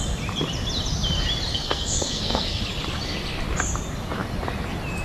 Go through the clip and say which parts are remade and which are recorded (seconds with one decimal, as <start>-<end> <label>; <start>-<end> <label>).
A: 0.0-1.5 recorded; 1.5-2.6 remade; 2.6-5.0 recorded

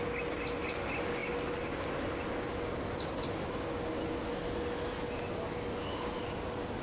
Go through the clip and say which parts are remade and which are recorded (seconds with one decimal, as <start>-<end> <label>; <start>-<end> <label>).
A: 0.0-6.8 recorded

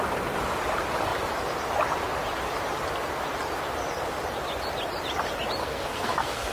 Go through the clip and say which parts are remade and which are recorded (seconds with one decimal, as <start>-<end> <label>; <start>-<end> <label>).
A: 0.0-5.6 recorded; 5.6-6.5 remade

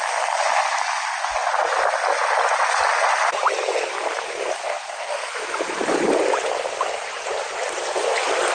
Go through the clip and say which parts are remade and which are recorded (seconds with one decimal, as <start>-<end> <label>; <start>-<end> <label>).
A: 0.0-4.6 recorded; 4.6-5.3 remade; 5.3-8.5 recorded